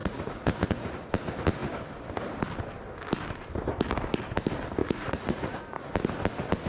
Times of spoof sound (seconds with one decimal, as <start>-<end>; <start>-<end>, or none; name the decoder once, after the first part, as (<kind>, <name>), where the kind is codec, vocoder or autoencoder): 0.0-1.0 (vocoder, Vocos); 4.8-5.6